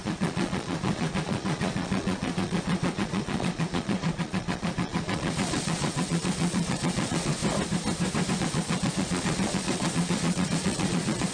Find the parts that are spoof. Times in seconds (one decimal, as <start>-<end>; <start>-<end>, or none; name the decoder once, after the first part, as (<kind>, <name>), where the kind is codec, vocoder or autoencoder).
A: 0.0-7.4 (vocoder, Vocos); 8.4-11.3